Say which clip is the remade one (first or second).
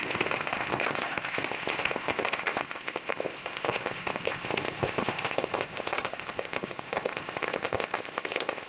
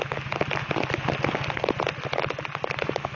first